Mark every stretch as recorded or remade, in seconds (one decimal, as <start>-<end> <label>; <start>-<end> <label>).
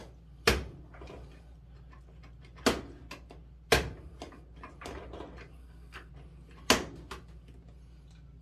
0.0-5.6 recorded; 5.6-6.1 remade; 6.1-8.4 recorded